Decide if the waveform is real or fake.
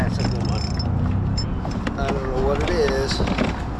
real